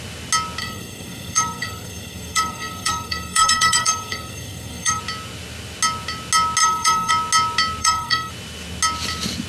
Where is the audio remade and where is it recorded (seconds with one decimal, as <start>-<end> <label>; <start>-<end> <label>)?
0.0-0.6 recorded; 0.6-5.0 remade; 5.0-6.6 recorded; 6.6-7.1 remade; 7.1-7.8 recorded; 7.8-8.3 remade; 8.3-9.5 recorded